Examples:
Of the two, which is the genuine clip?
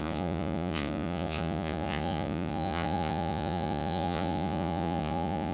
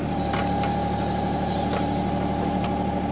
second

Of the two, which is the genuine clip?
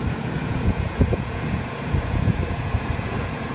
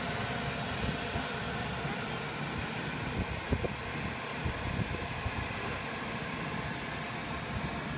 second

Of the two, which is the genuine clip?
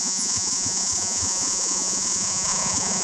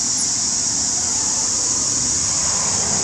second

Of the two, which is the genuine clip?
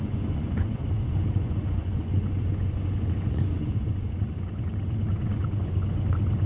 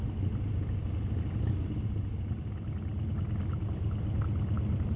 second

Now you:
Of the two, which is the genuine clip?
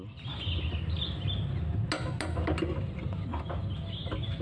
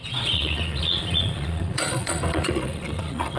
first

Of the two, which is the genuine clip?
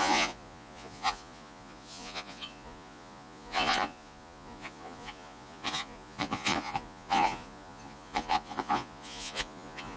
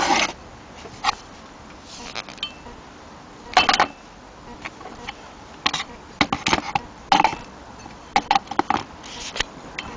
second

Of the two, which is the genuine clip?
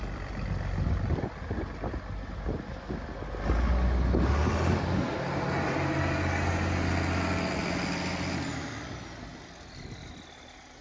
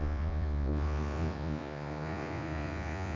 first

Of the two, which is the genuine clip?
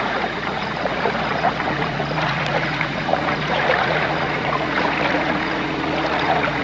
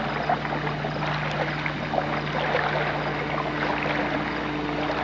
second